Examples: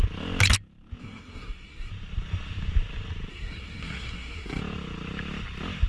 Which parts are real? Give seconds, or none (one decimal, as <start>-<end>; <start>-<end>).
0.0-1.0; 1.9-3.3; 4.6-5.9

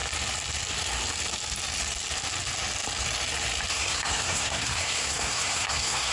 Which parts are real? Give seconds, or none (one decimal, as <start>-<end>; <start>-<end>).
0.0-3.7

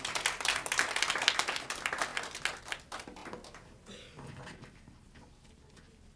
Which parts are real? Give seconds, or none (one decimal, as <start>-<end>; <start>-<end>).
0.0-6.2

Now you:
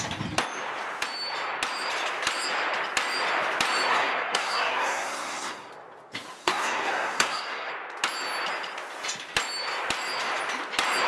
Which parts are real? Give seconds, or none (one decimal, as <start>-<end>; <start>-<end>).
0.0-3.9; 5.7-6.4; 7.7-11.1